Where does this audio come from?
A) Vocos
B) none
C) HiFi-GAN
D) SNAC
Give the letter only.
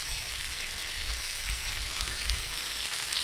D